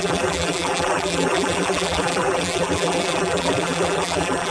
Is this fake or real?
fake